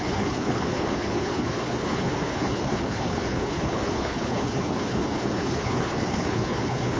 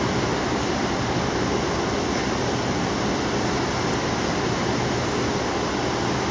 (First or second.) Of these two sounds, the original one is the second